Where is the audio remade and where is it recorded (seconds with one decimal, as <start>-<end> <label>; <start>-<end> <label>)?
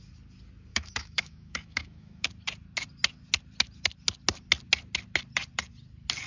0.0-0.7 recorded; 0.7-2.3 remade; 2.3-6.3 recorded